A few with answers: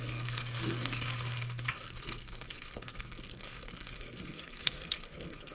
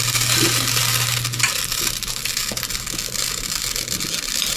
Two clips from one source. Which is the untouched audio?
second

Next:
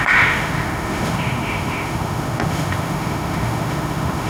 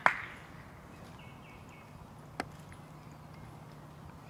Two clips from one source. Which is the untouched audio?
second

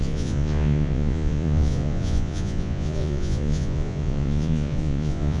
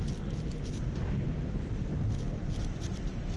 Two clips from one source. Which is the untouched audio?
second